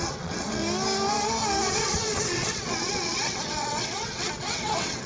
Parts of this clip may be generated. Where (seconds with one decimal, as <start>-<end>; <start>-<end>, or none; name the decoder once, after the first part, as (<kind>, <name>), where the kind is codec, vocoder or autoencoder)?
0.0-0.6 (vocoder, WaveNeXt); 1.7-5.1